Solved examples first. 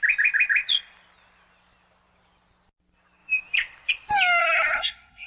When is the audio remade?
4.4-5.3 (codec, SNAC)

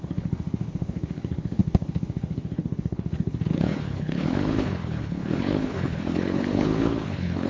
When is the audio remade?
0.0-7.5 (codec, HILCodec)

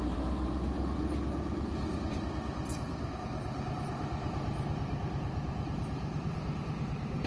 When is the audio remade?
0.0-1.2 (vocoder, BigVGAN v2); 2.7-6.6

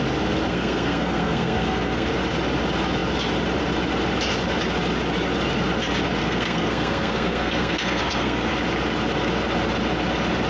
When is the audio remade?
0.5-2.1 (codec, SNAC); 6.2-8.5

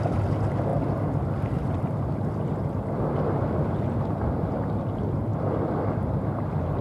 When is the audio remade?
none